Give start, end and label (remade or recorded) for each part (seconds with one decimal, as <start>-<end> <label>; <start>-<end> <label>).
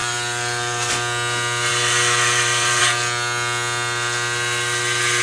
0.0-0.9 remade; 0.9-1.7 recorded; 1.7-2.8 remade; 2.8-5.2 recorded